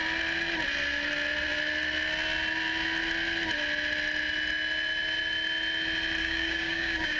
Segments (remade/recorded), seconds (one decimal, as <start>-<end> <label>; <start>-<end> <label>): 0.0-6.2 recorded; 6.2-7.2 remade